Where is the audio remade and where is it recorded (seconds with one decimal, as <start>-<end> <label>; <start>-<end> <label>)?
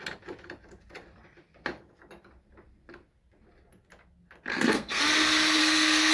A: 0.0-4.5 recorded; 4.5-5.0 remade; 5.0-5.6 recorded; 5.6-6.1 remade